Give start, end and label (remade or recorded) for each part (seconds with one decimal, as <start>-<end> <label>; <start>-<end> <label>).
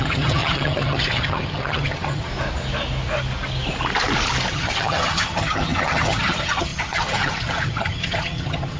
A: 0.0-2.3 remade; 2.3-4.5 recorded; 4.5-8.8 remade